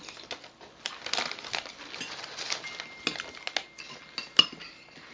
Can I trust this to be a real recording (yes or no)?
yes